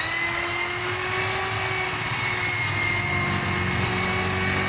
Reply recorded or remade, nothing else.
recorded